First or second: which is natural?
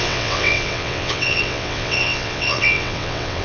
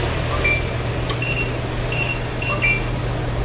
second